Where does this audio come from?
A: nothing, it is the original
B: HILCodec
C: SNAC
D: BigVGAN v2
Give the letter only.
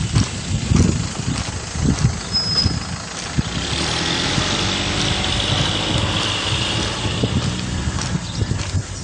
A